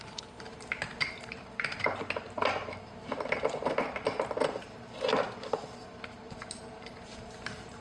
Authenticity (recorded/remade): remade